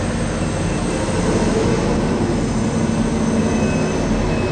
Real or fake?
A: real